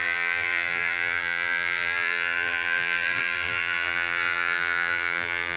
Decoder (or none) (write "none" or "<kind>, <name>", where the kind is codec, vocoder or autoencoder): vocoder, BigVGAN v2